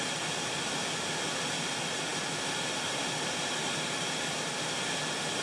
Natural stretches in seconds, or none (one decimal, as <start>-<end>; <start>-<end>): 0.0-5.4